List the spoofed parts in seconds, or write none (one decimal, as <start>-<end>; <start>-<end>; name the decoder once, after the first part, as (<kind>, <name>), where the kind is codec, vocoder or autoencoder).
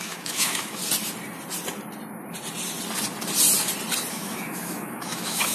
0.0-0.8 (autoencoder, DAC-VAE); 4.1-5.5